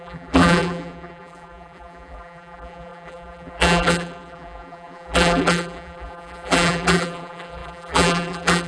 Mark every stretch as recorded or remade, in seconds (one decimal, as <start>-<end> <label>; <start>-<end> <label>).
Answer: 0.0-8.7 remade